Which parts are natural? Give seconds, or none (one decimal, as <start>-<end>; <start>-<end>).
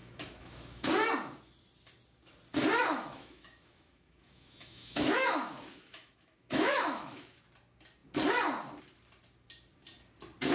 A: 0.9-2.9; 7.4-10.5